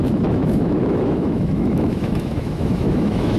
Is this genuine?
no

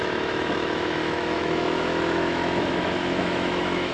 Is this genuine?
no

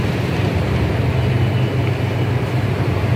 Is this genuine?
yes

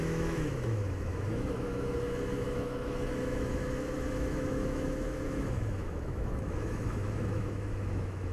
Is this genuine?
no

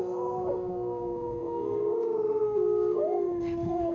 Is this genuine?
no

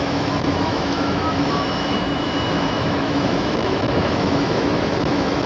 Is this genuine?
no